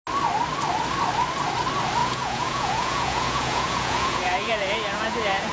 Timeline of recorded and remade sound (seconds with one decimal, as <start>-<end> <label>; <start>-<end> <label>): 0.0-2.0 recorded; 2.0-5.5 remade